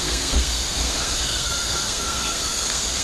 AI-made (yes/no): yes